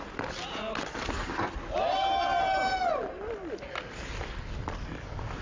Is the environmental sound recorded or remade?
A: recorded